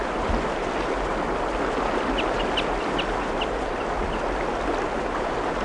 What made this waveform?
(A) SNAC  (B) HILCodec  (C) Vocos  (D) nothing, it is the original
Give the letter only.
D